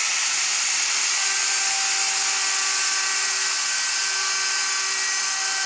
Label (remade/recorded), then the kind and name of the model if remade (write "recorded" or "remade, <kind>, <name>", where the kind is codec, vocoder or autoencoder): recorded